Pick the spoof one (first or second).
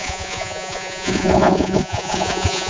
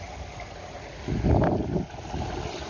first